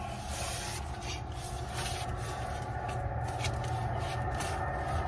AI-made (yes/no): no